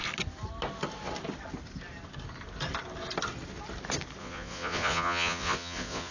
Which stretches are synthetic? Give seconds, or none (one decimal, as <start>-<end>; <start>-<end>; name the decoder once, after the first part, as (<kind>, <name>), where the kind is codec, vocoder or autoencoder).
4.2-6.1 (vocoder, Vocos)